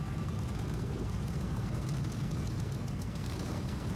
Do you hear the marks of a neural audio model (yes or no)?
yes